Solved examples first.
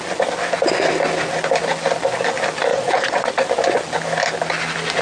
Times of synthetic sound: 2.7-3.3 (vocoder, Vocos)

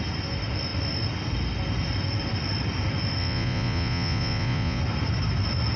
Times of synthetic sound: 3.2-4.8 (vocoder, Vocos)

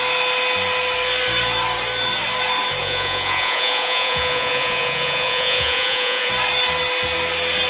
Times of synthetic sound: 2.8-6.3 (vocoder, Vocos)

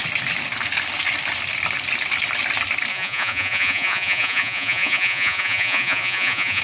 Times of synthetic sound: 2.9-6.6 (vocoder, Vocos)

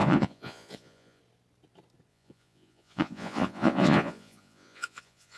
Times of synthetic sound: 0.0-1.2 (vocoder, Vocos); 2.1-5.4